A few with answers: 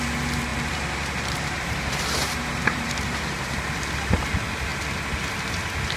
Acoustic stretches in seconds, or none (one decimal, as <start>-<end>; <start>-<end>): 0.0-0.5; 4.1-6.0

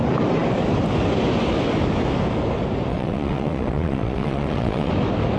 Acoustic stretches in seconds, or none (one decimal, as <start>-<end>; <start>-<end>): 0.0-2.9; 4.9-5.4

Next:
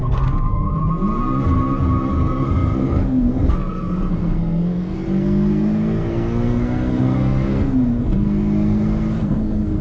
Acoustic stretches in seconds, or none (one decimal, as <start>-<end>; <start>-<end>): 0.8-2.1

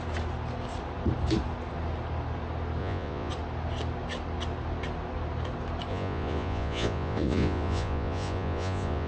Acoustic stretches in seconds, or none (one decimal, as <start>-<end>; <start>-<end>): 0.0-2.8; 3.3-5.9

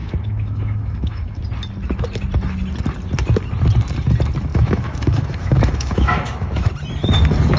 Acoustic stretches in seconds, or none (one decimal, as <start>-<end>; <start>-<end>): 1.4-4.5; 6.7-7.6